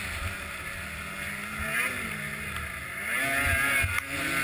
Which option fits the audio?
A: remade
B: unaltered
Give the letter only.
B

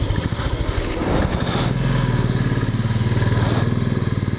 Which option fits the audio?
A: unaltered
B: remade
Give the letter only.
A